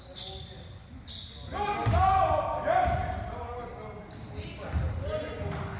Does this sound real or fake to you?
real